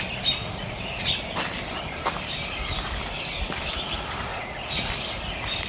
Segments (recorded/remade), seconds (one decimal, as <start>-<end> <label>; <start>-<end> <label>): 0.0-0.4 recorded; 0.4-1.1 remade; 1.1-4.3 recorded; 4.3-4.9 remade; 4.9-5.7 recorded

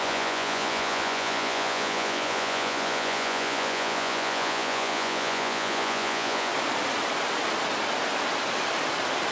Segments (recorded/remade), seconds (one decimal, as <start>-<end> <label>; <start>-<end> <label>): 0.0-6.5 remade; 6.5-9.3 recorded

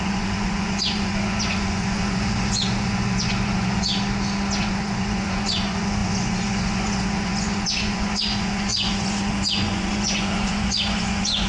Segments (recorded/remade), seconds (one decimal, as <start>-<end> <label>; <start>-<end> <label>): 0.0-3.9 remade; 3.9-4.6 recorded; 4.6-11.5 remade